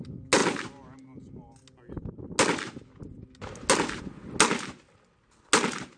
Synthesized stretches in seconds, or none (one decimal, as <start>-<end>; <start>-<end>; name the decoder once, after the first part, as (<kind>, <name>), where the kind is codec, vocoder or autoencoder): none